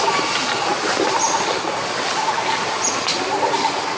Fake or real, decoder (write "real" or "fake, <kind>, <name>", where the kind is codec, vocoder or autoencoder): real